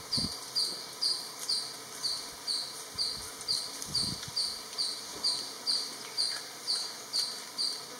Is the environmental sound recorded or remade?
remade